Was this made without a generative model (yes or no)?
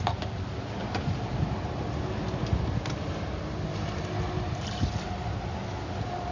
yes